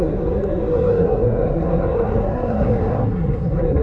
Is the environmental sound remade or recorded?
remade